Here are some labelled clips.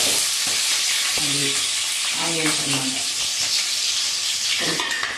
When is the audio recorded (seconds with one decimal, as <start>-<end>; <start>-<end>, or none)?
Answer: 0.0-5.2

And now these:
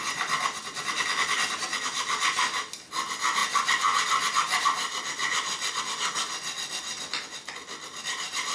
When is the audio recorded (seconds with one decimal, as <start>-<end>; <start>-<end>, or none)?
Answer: 0.0-8.5

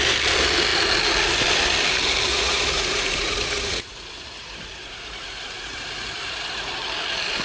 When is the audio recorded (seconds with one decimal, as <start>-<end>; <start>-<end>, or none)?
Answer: 0.0-2.3; 6.7-7.4

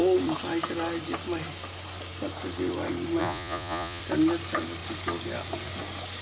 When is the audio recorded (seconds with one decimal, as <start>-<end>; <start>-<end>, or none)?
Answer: 0.0-3.2; 4.0-6.2

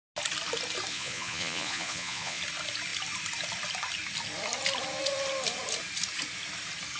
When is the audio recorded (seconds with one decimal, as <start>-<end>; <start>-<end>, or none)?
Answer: 0.0-0.9; 2.4-7.0